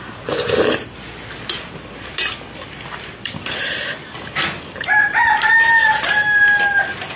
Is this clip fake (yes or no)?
no